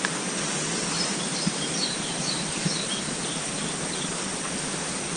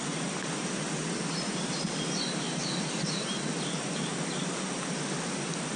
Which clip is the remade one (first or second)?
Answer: first